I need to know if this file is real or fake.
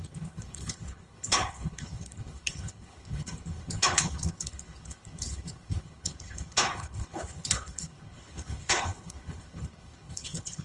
fake